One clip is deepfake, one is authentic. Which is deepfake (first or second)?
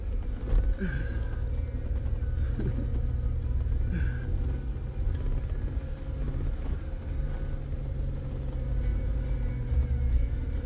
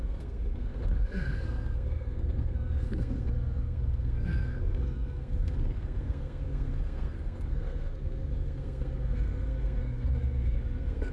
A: second